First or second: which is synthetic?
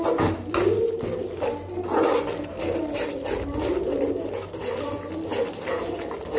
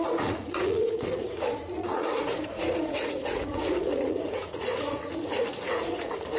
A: second